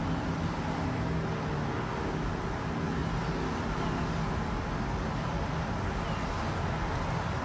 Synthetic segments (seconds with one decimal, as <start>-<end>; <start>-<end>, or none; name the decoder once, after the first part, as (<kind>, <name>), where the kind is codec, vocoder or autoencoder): none